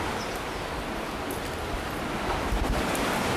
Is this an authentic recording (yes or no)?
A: yes